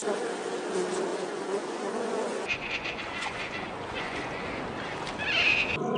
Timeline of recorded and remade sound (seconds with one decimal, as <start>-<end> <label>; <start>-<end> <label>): 0.0-1.1 recorded; 1.1-4.6 remade; 4.6-6.0 recorded